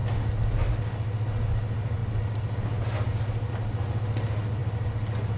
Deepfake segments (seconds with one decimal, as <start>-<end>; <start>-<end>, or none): none